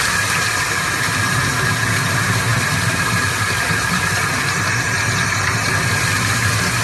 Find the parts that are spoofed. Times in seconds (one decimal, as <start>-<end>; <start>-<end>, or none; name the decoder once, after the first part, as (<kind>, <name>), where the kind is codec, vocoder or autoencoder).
2.5-5.0 (vocoder, BigVGAN v2)